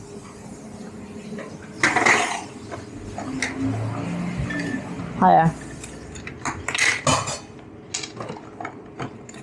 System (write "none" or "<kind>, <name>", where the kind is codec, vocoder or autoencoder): none